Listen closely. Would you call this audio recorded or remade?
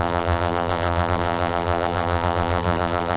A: remade